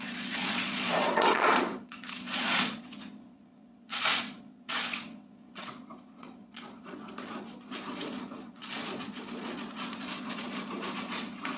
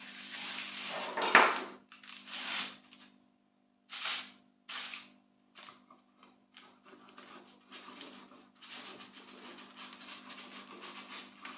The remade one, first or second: first